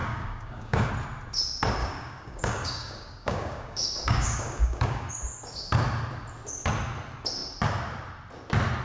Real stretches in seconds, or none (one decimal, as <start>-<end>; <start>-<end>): 0.9-1.8; 5.1-8.8